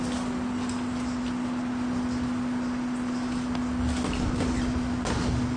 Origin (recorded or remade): recorded